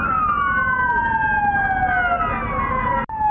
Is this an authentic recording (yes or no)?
yes